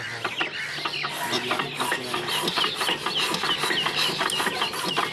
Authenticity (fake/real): real